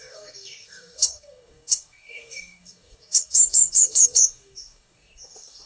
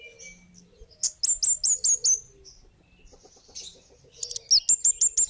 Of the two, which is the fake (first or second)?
first